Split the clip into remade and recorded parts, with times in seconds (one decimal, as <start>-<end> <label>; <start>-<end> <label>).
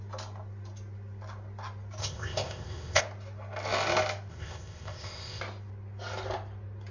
0.0-2.0 recorded; 2.0-3.0 remade; 3.0-4.3 recorded; 4.3-5.4 remade; 5.4-6.9 recorded